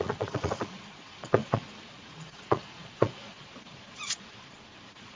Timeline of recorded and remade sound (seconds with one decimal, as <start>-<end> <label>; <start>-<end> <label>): 0.0-5.2 remade